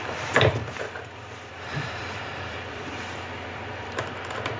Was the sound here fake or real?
fake